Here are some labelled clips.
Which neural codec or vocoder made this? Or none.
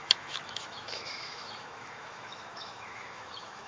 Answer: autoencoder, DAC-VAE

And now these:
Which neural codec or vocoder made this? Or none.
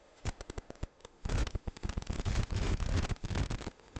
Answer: autoencoder, DAC-VAE